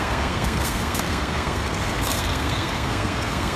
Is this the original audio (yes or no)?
no